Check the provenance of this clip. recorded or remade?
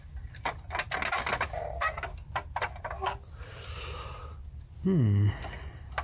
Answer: recorded